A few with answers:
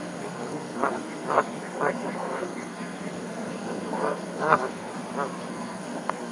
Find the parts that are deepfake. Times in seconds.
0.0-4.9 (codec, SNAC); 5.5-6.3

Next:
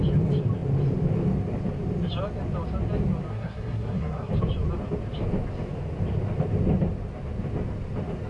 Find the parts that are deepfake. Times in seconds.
3.3-4.3 (codec, SNAC)

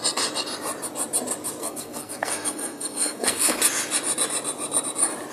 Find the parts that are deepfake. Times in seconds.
1.6-3.6 (codec, SNAC)

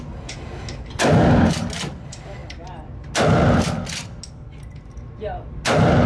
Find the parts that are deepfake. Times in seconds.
none

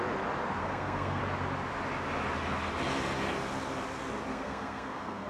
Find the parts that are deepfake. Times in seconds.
0.6-1.2 (codec, SNAC); 4.3-5.3

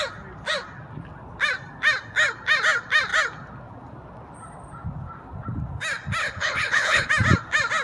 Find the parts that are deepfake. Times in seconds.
6.2-7.1 (codec, HILCodec)

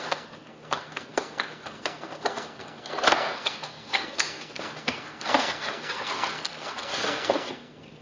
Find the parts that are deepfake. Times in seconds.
0.0-8.0 (codec, SNAC)

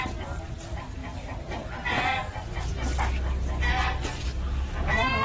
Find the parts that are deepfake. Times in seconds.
none